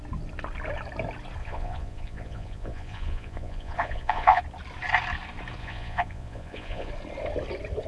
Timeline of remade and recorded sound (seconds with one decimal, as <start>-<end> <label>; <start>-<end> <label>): 0.0-1.4 recorded; 1.4-4.4 remade; 4.4-5.6 recorded; 5.6-6.9 remade; 6.9-7.9 recorded